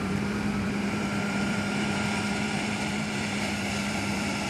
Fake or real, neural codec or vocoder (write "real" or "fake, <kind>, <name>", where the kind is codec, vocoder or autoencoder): fake, vocoder, BigVGAN v2